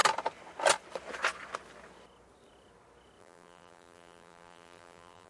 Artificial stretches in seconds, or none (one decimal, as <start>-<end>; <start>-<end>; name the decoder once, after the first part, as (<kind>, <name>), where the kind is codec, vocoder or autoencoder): 3.2-5.3 (vocoder, BigVGAN v2)